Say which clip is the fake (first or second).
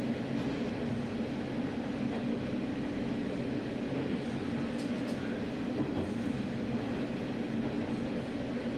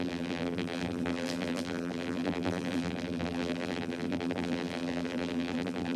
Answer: second